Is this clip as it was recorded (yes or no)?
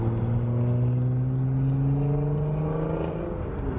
yes